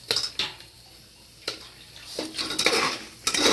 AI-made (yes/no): no